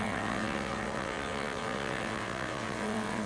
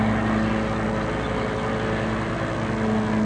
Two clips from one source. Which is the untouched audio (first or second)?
second